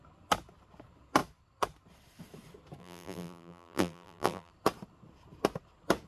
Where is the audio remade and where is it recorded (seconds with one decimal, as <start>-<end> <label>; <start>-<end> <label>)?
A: 0.0-2.8 recorded; 2.8-4.5 remade; 4.5-6.1 recorded